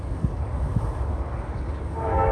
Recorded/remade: remade